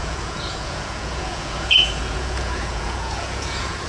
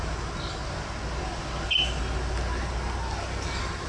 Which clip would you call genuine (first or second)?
second